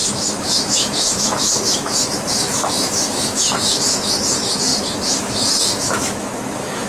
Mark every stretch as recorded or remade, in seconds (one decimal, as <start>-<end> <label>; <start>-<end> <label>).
0.0-6.9 remade